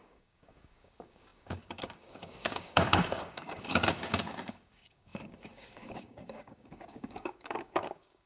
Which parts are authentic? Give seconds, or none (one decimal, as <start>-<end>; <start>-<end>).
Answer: none